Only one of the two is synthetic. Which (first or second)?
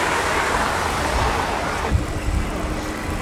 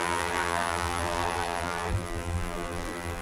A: second